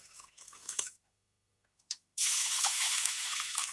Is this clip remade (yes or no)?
yes